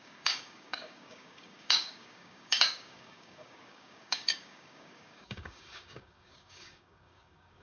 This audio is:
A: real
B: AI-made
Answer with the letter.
B